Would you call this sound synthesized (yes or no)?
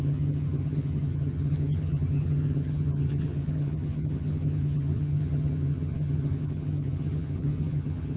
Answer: yes